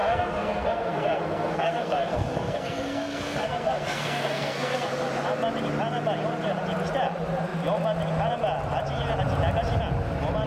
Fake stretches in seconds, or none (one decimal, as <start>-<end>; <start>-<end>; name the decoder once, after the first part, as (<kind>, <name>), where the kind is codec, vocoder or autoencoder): 0.0-4.9 (codec, SNAC)